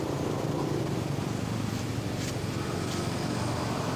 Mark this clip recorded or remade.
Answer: recorded